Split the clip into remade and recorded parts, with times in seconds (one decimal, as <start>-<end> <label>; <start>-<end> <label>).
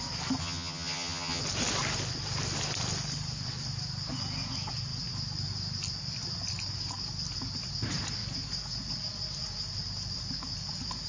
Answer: 0.0-0.4 recorded; 0.4-1.4 remade; 1.4-11.1 recorded